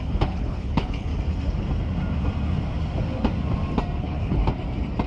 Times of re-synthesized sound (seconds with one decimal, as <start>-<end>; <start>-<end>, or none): 0.0-1.1; 4.0-4.4